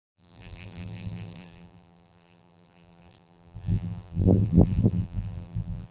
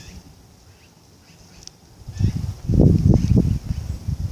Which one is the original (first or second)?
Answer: second